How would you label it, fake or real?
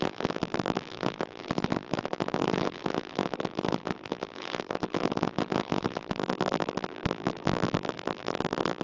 fake